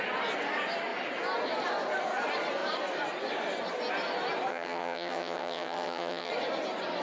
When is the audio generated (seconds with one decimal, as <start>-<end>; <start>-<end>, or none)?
4.5-6.3